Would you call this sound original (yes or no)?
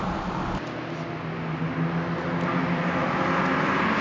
yes